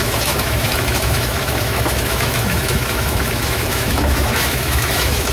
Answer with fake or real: fake